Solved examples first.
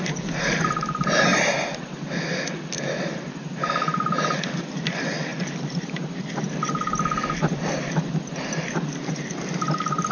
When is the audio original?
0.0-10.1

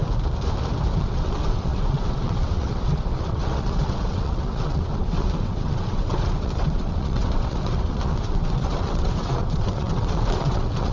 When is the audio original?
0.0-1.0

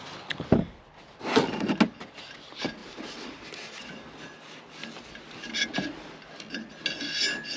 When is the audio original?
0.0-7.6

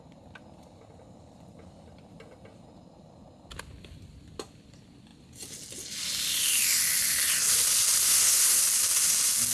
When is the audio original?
0.0-8.0; 8.6-9.5

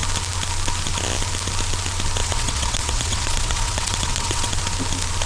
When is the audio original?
0.0-2.2; 4.5-5.3

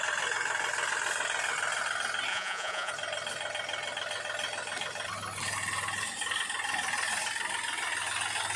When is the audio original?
0.0-2.3; 2.9-8.6

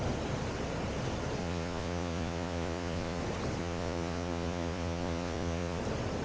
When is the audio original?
0.0-1.4; 3.2-3.6; 5.8-6.2

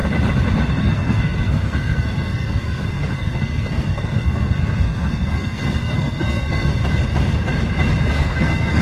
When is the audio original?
0.0-0.8; 6.7-8.1